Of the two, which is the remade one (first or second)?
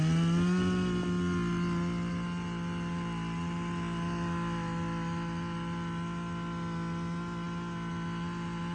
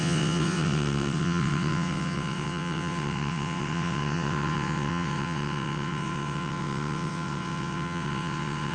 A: second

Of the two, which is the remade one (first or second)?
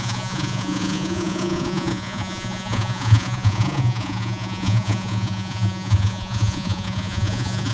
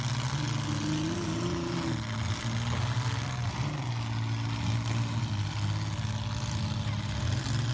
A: first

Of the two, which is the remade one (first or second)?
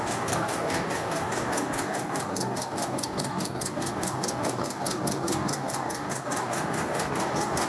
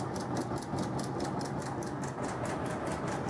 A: first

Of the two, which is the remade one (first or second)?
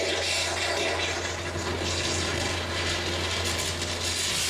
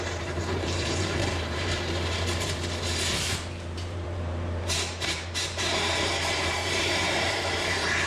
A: second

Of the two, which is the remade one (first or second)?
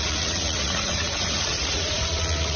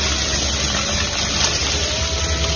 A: first